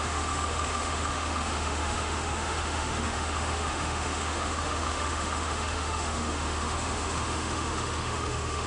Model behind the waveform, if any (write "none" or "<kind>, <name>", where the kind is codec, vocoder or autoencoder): autoencoder, DAC-VAE